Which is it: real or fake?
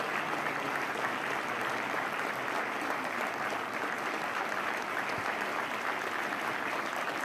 real